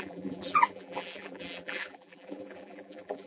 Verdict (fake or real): fake